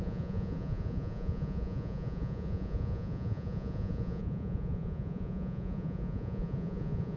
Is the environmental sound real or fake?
fake